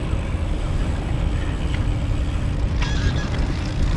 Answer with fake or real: real